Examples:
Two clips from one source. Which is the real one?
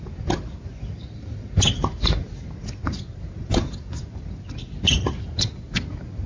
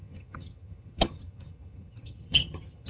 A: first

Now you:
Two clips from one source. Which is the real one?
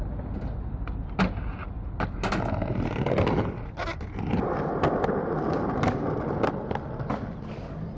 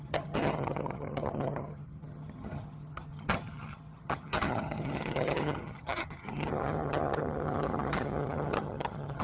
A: first